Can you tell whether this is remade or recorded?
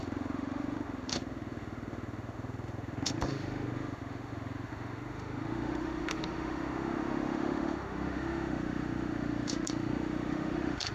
remade